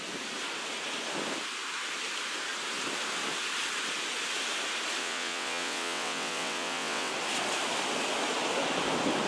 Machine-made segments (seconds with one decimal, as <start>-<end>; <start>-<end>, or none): 5.0-7.1